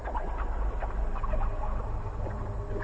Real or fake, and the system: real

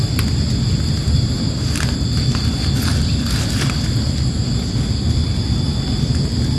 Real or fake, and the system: real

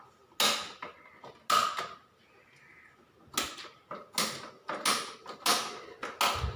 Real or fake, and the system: real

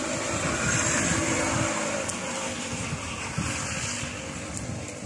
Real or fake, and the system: real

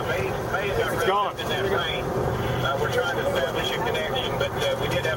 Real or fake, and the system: fake, vocoder, BigVGAN v2